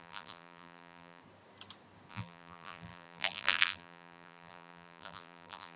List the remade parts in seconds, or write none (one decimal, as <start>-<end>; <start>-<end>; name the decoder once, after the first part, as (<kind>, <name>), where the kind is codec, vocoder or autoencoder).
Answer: 0.0-1.2 (vocoder, BigVGAN v2); 2.1-5.8